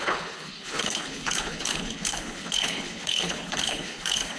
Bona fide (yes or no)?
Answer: no